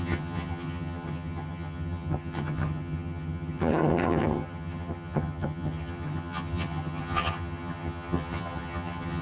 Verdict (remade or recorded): remade